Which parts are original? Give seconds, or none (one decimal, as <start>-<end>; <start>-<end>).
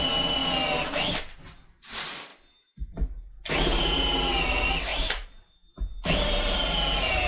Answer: 0.0-4.9; 5.7-7.3